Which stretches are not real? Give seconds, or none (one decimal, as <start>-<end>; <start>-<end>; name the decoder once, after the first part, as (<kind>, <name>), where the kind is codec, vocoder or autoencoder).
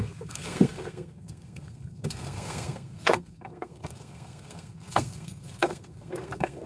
0.0-6.7 (codec, SNAC)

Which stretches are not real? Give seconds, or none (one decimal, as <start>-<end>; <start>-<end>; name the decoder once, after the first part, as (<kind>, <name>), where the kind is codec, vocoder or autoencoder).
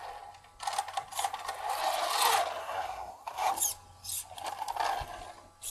2.6-3.5 (codec, SNAC)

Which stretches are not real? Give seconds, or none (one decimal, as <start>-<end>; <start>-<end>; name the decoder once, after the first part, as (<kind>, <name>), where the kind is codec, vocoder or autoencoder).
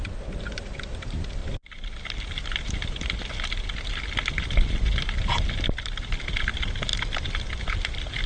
6.9-7.4 (vocoder, BigVGAN v2)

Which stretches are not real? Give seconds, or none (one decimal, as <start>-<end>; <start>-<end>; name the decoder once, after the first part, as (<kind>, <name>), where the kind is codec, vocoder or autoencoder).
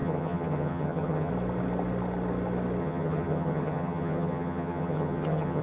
0.0-1.3 (vocoder, HiFi-GAN); 2.8-5.6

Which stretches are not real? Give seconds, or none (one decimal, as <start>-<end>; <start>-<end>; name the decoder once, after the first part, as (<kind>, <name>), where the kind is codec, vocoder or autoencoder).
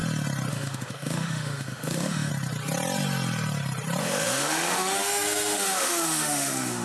0.5-2.3 (autoencoder, DAC-VAE); 4.0-6.8